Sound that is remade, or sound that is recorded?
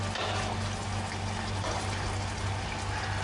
recorded